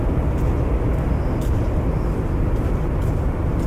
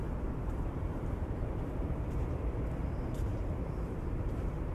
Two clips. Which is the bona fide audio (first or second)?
first